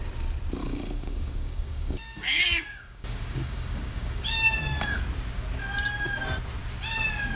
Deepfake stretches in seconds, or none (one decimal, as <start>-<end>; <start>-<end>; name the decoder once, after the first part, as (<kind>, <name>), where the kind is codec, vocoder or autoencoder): 0.6-5.0 (codec, DAC)